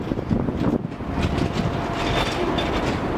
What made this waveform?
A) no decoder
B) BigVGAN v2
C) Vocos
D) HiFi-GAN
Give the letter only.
A